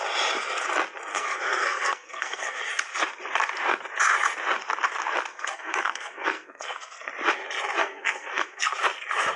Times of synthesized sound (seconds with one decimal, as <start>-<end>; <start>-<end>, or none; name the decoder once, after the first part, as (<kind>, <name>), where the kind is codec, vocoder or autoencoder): 1.1-2.6 (codec, SNAC); 5.3-7.1; 7.8-8.7